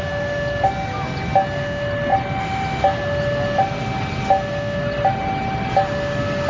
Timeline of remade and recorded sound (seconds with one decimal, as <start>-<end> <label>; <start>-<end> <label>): 0.0-6.5 recorded